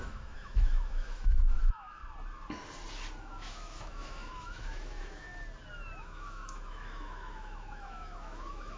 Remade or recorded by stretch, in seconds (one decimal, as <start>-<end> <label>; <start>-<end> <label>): 0.0-2.0 remade; 2.0-3.2 recorded; 3.2-5.3 remade; 5.3-6.0 recorded; 6.0-8.8 remade